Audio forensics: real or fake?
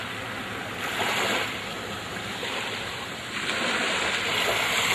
fake